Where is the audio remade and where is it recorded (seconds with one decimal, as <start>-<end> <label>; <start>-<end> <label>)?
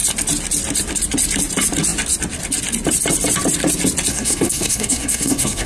0.0-4.1 recorded; 4.1-5.7 remade